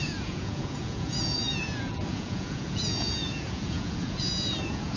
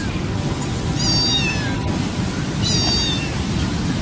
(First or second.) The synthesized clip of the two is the first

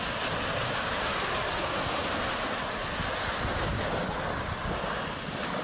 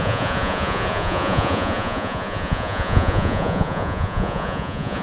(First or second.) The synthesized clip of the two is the second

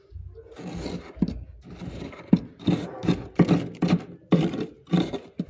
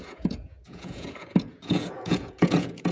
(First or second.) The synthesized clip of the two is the second